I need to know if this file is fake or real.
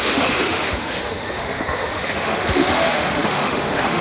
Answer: fake